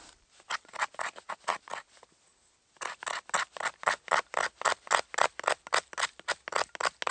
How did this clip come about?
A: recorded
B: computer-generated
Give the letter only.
A